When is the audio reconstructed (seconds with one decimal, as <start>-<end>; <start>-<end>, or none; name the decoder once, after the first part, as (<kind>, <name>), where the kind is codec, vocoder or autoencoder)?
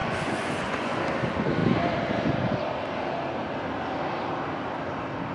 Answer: 0.0-1.0 (vocoder, Vocos)